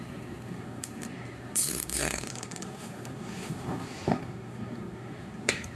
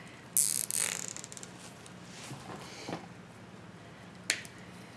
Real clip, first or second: second